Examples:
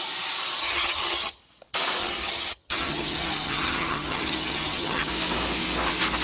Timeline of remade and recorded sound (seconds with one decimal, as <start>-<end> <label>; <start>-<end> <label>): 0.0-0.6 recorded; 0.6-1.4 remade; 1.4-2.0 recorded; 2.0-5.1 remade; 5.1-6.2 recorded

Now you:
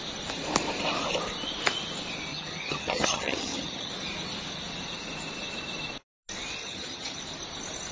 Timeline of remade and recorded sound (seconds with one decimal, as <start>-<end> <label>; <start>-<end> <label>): 0.0-2.3 recorded; 2.3-3.9 remade; 3.9-6.6 recorded; 6.6-7.2 remade; 7.2-7.9 recorded

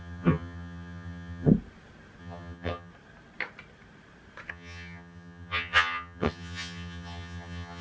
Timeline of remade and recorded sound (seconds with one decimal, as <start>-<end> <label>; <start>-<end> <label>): 0.0-1.5 remade; 1.5-2.2 recorded; 2.2-2.9 remade; 2.9-4.5 recorded; 4.5-7.8 remade